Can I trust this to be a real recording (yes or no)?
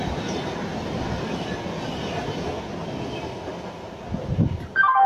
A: yes